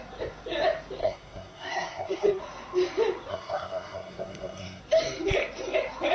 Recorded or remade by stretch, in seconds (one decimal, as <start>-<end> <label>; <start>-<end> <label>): 0.0-1.0 recorded; 1.0-2.4 remade; 2.4-3.3 recorded; 3.3-4.8 remade; 4.8-6.1 recorded